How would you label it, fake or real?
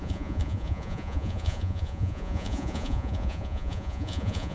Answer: fake